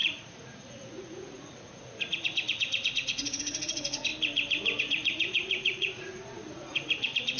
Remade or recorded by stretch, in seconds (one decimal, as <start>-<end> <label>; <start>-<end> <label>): 0.0-4.1 remade; 4.1-4.8 recorded; 4.8-7.4 remade